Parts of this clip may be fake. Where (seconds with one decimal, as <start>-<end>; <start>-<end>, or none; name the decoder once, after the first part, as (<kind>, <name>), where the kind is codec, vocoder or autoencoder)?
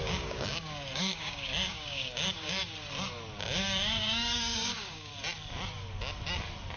0.0-2.6 (codec, DAC); 3.4-5.1